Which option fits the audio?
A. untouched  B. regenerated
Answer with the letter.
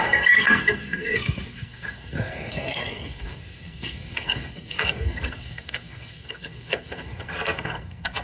B